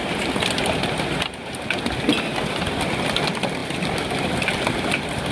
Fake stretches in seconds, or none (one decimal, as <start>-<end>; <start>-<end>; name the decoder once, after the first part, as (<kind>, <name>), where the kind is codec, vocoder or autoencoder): 3.6-4.5 (vocoder, BigVGAN v2)

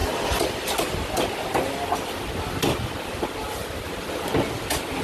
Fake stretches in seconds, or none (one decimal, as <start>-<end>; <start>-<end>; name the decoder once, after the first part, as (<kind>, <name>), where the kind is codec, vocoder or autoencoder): none